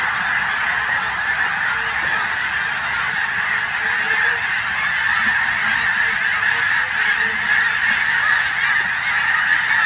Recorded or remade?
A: recorded